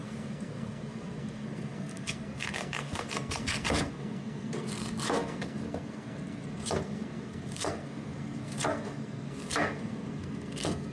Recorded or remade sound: remade